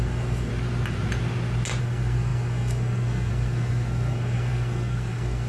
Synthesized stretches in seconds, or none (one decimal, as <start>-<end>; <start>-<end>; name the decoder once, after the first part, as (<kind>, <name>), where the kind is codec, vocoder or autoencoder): 0.0-0.5 (codec, SNAC); 1.8-5.5